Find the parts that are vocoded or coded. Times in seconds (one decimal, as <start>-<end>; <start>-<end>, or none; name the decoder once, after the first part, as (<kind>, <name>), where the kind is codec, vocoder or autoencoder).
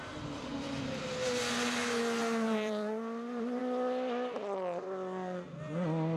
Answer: 0.5-1.0 (vocoder, BigVGAN v2); 2.2-3.6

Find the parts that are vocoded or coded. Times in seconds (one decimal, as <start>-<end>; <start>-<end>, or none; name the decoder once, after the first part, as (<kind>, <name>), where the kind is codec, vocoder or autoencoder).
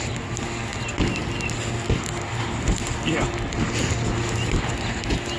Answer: none